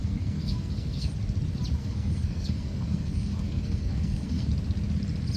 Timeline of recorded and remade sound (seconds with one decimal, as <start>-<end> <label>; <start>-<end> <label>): 0.0-1.1 remade; 1.1-1.8 recorded; 1.8-4.5 remade; 4.5-5.4 recorded